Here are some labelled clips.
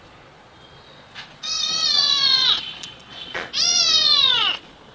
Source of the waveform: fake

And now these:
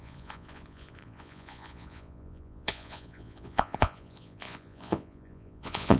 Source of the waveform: fake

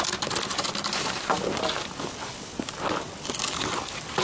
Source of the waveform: real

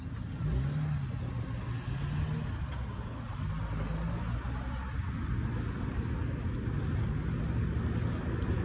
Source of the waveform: real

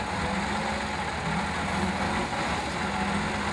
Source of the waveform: real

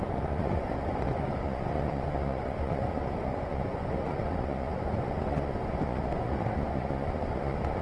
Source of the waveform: fake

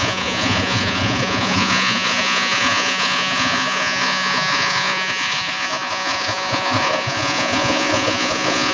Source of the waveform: fake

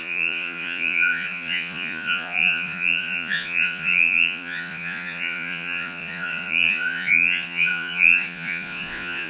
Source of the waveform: fake